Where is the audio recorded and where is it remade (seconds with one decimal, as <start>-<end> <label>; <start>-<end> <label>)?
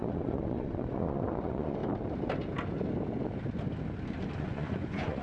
0.0-1.8 remade; 1.8-4.3 recorded; 4.3-5.2 remade